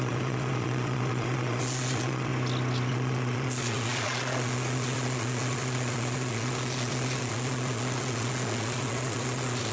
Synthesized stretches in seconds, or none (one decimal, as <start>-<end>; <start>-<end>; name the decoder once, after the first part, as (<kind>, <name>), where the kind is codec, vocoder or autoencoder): 0.0-2.3 (vocoder, Vocos); 2.9-9.7